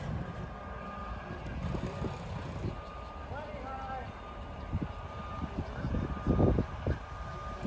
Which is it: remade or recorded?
recorded